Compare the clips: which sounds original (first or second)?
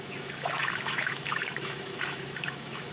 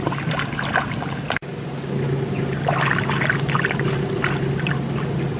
second